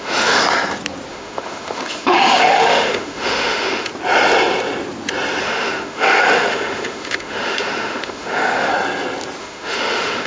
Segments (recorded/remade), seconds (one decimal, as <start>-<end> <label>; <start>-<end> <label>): 0.0-0.4 remade; 0.4-1.1 recorded; 1.1-3.9 remade; 3.9-5.4 recorded; 5.4-8.7 remade; 8.7-9.4 recorded; 9.4-10.3 remade